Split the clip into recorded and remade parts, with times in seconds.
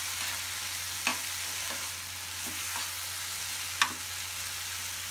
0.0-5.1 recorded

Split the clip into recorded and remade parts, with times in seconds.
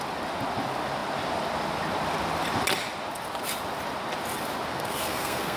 0.0-4.7 recorded; 4.7-5.6 remade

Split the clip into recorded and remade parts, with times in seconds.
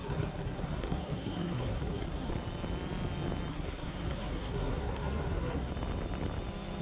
0.0-2.3 remade; 2.3-3.5 recorded; 3.5-5.7 remade; 5.7-6.8 recorded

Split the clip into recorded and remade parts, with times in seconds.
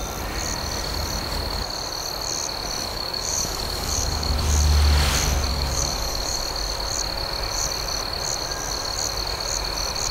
0.0-2.9 recorded; 2.9-4.3 remade; 4.3-5.5 recorded; 5.5-6.4 remade; 6.4-10.1 recorded